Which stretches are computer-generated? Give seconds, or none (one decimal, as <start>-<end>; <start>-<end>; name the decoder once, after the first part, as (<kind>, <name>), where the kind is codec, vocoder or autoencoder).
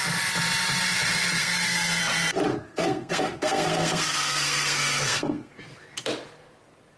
1.4-2.0 (codec, SNAC); 2.5-5.6